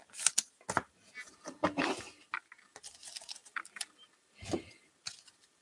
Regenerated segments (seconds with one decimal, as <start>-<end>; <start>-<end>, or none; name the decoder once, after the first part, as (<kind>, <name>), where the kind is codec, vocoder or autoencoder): 3.4-4.7 (vocoder, BigVGAN v2)